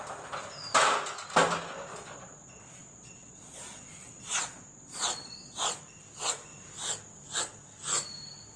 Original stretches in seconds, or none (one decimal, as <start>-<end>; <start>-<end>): 0.0-1.9; 5.8-8.6